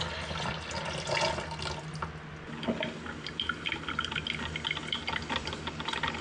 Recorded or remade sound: recorded